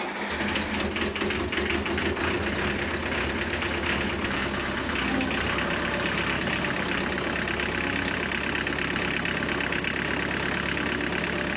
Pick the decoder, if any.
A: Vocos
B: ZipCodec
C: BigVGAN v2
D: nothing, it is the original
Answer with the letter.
D